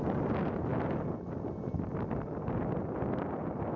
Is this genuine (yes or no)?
yes